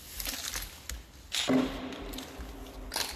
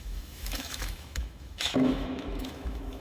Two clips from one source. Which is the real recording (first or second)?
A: first